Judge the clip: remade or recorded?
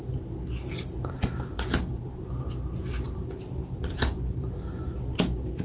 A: recorded